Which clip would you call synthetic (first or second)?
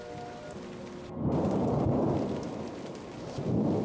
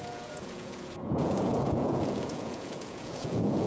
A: second